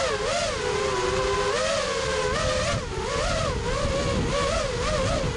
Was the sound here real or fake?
real